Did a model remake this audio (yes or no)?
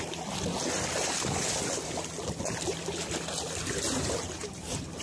no